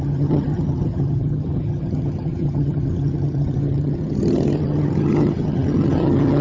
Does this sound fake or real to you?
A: fake